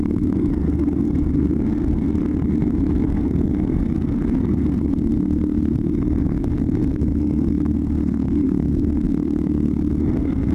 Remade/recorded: remade